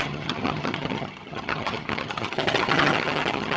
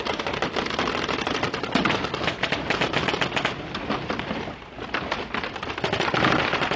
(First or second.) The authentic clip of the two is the second